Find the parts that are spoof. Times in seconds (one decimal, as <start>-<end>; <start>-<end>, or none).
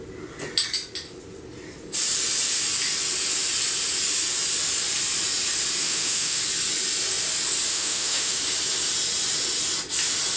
5.8-6.4; 7.7-8.4